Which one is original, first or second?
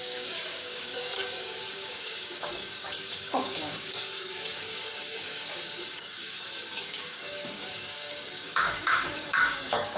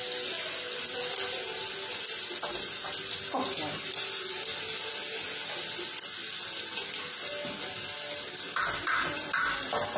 second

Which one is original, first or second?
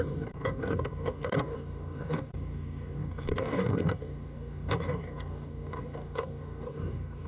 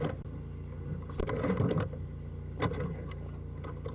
second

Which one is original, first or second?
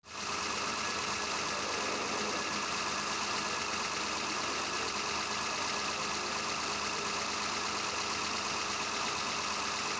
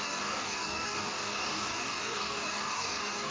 first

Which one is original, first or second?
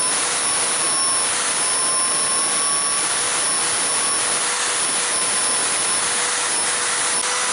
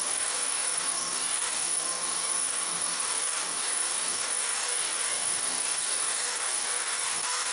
first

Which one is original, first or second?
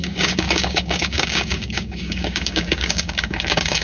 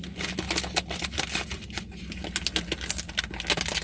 second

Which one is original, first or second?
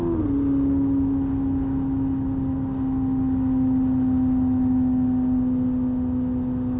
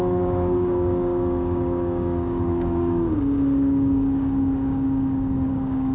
first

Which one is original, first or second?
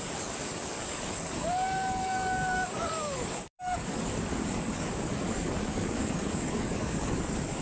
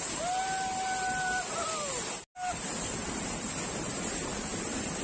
second